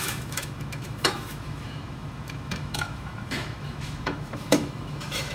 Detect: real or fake fake